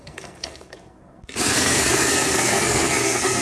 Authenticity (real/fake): fake